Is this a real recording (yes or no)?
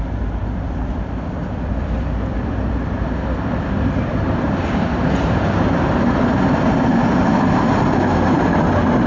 no